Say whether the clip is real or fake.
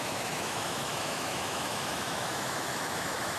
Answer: fake